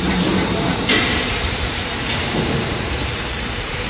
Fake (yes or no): yes